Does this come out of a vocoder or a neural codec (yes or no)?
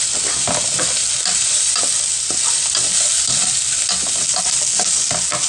no